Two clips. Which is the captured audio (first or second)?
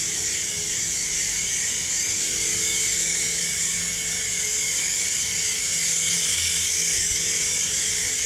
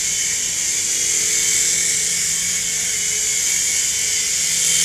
second